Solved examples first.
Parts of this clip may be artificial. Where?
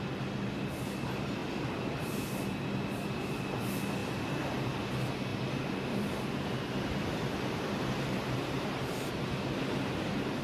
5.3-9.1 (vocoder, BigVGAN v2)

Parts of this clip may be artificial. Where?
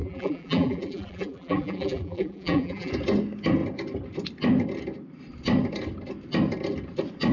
0.0-2.9 (vocoder, BigVGAN v2)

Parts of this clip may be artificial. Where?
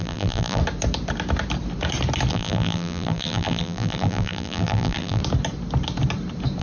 0.0-0.6 (vocoder, BigVGAN v2); 2.3-5.2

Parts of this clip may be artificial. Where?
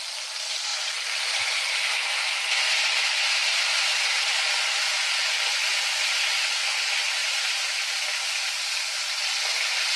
7.2-8.5 (vocoder, BigVGAN v2)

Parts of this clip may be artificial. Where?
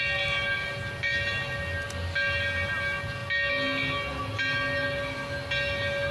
none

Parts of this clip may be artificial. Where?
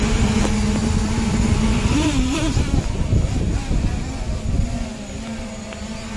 0.8-4.0 (vocoder, BigVGAN v2)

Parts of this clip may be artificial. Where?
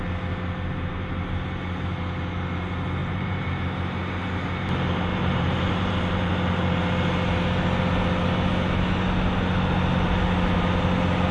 3.0-3.6 (vocoder, BigVGAN v2); 5.1-6.0